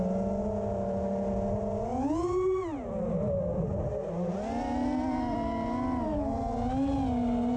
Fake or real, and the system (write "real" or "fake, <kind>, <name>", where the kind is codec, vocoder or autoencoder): real